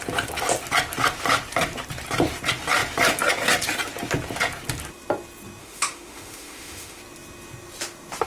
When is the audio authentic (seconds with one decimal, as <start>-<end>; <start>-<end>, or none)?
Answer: 0.0-5.6; 7.0-8.3